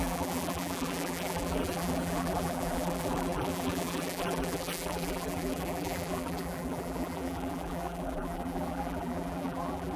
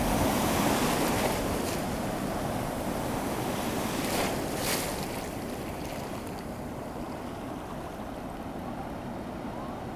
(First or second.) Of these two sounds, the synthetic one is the first